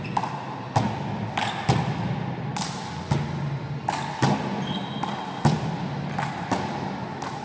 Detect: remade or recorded recorded